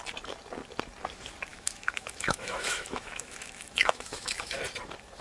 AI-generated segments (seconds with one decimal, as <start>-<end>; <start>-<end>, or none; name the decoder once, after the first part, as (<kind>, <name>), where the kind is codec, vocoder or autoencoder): 1.5-4.6 (autoencoder, DAC-VAE)